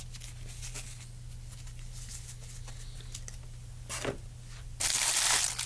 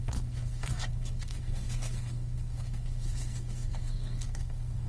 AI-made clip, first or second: second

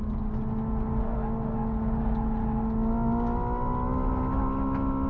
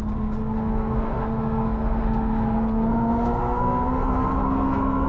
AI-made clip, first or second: second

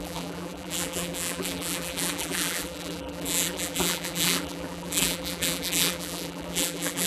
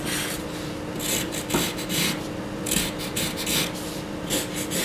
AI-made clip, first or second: first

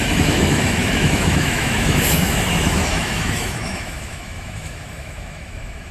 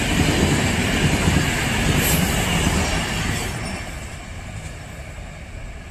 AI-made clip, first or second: first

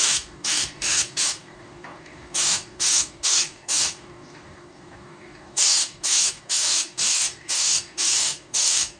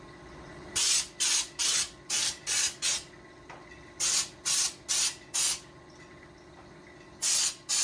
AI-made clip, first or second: first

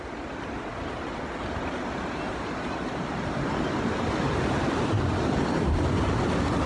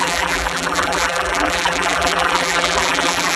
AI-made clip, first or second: second